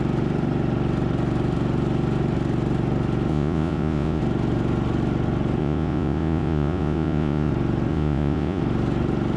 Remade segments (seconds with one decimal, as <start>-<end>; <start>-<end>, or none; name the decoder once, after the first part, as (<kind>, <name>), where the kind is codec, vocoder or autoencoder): 3.3-4.2 (vocoder, Vocos); 5.6-7.5; 7.9-8.6